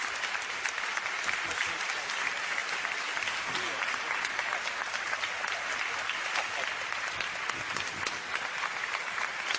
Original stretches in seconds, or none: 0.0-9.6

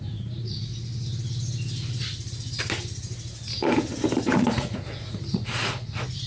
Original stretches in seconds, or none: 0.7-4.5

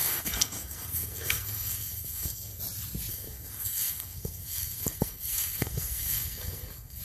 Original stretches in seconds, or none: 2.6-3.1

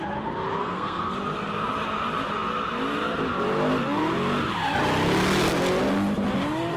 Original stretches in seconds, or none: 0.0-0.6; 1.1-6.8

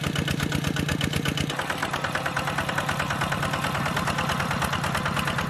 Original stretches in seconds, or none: 0.0-5.5

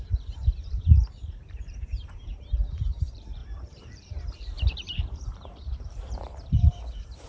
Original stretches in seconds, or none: none

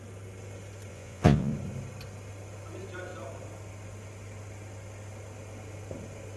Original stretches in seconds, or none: 0.0-0.9; 1.5-6.4